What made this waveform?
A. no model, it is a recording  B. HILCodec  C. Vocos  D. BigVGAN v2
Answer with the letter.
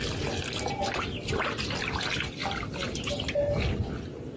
A